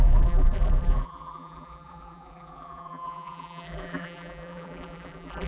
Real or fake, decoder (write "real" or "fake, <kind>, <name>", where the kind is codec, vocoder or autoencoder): fake, vocoder, BigVGAN v2